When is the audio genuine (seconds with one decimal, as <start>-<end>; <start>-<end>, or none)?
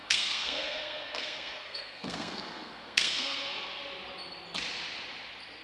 3.8-5.6